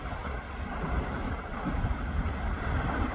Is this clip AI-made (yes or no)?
no